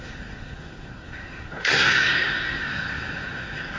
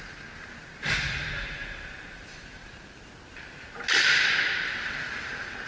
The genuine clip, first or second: second